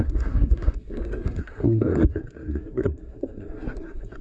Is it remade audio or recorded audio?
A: remade